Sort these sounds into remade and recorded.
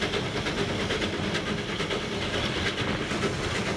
recorded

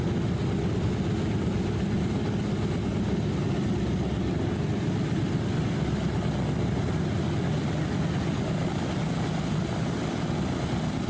recorded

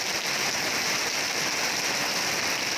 recorded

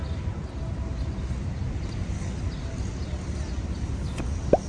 recorded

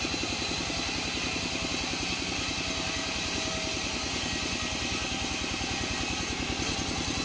recorded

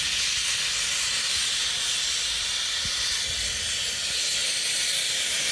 recorded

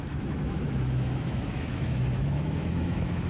remade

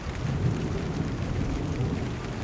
recorded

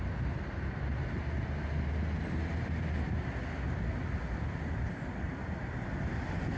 recorded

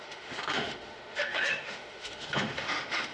remade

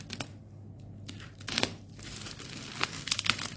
recorded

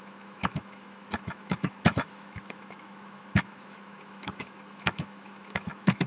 remade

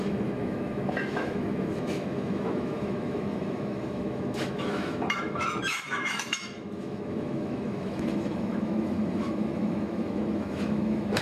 remade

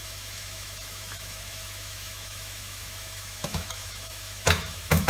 remade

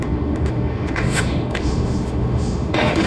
remade